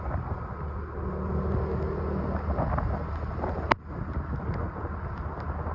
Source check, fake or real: real